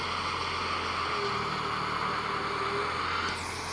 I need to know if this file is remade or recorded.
recorded